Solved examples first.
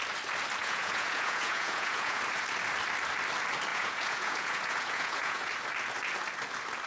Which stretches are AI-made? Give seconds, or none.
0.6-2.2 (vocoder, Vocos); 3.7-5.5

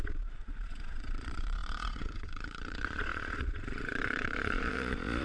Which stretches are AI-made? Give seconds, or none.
0.0-5.2 (vocoder, Vocos)